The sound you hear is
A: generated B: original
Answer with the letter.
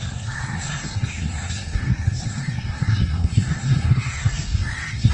A